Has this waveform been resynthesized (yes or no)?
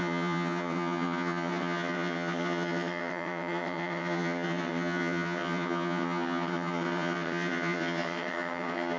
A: yes